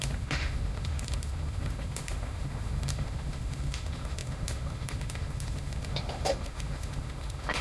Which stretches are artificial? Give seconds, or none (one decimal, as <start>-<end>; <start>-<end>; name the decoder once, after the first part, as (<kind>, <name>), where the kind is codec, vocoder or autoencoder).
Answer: 0.0-7.6 (autoencoder, DAC-VAE)